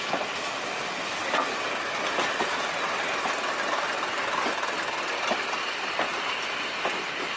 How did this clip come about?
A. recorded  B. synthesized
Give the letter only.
A